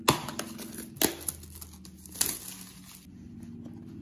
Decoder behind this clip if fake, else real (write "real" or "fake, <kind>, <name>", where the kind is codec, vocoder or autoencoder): real